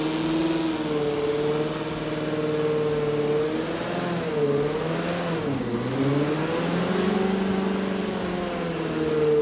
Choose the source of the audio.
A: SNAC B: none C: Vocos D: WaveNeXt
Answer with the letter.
B